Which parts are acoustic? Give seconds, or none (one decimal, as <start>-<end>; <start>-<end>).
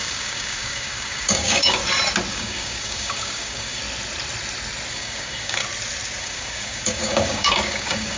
1.8-2.3; 3.8-4.9; 5.6-6.2